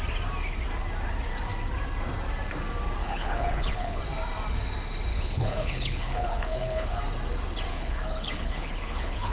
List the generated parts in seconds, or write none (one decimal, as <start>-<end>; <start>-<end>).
3.0-4.0; 5.1-7.0; 7.7-9.3